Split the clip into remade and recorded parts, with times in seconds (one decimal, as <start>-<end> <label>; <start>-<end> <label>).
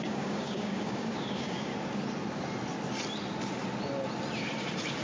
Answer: 0.0-1.7 remade; 1.7-5.0 recorded